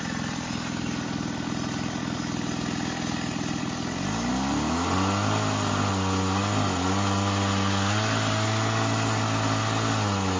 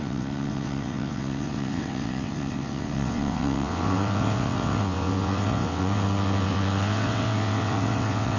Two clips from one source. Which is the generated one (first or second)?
second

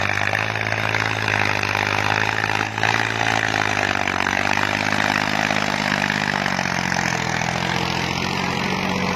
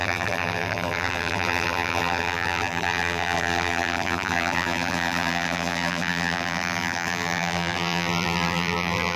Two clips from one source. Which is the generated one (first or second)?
second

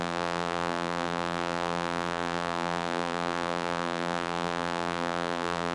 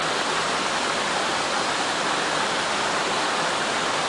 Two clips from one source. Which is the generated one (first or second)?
first